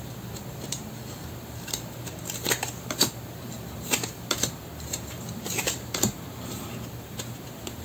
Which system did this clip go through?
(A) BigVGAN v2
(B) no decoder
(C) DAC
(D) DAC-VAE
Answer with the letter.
A